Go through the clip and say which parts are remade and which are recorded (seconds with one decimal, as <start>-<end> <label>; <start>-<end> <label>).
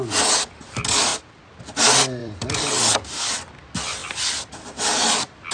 0.0-1.1 recorded; 1.1-1.6 remade; 1.6-2.2 recorded; 2.2-3.3 remade; 3.3-4.0 recorded; 4.0-5.5 remade